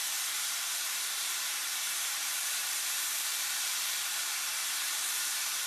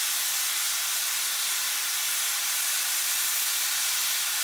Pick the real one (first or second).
second